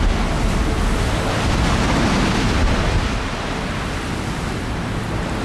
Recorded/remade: recorded